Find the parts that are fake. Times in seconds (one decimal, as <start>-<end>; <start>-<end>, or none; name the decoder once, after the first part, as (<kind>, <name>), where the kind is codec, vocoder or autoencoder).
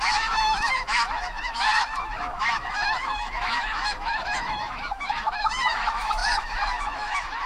0.0-7.5 (autoencoder, DAC-VAE)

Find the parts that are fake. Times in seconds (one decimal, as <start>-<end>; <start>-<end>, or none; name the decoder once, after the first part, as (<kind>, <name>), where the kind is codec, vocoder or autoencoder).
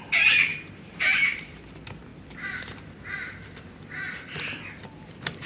0.5-1.6 (vocoder, BigVGAN v2)